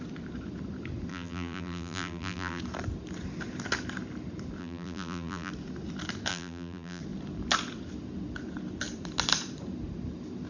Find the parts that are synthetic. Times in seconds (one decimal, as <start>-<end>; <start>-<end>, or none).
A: 1.1-2.6; 4.6-5.5; 6.3-7.0